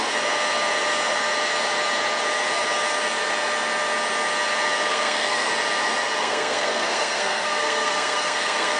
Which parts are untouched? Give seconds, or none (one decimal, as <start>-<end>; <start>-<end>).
0.0-4.9; 5.5-6.2

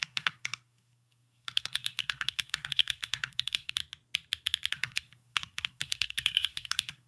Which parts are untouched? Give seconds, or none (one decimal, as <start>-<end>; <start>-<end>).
3.8-4.7